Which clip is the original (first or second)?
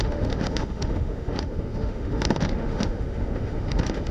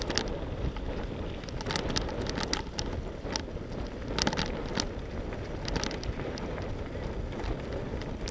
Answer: second